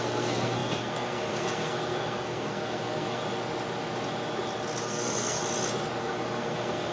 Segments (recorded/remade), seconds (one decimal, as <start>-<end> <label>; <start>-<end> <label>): 0.0-3.2 remade; 3.2-4.8 recorded; 4.8-5.4 remade; 5.4-6.0 recorded; 6.0-6.9 remade